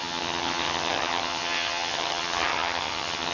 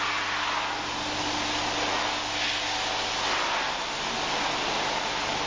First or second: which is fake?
first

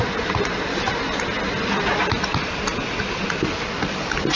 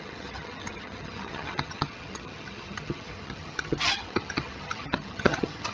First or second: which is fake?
second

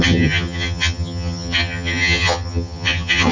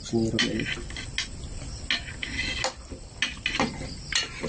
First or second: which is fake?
first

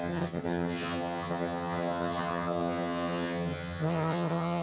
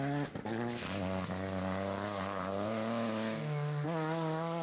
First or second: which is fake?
first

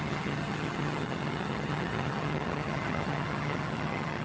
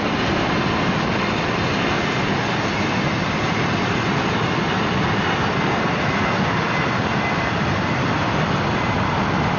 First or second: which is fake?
first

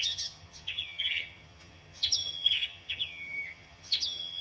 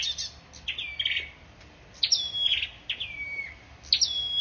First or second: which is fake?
first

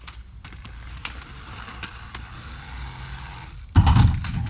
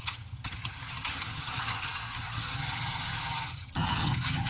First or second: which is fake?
second